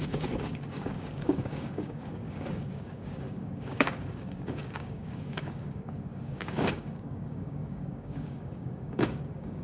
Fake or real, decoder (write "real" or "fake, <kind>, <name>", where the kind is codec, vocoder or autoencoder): fake, codec, DAC